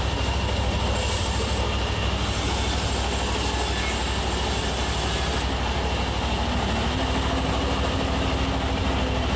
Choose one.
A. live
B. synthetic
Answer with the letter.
A